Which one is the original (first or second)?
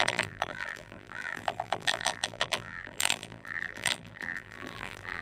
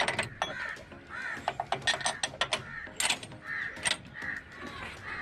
second